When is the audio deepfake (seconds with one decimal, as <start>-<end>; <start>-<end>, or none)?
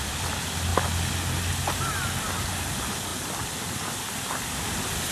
none